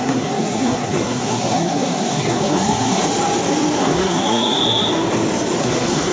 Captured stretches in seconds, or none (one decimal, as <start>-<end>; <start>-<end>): 3.0-3.8; 4.6-5.6